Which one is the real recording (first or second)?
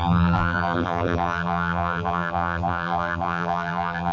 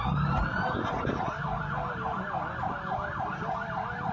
second